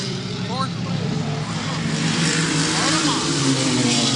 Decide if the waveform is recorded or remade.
remade